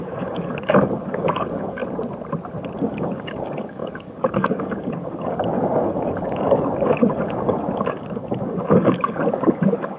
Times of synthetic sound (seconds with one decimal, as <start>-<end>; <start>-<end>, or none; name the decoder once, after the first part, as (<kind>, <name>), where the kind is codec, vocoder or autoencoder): 0.0-1.8 (codec, DAC); 2.8-10.0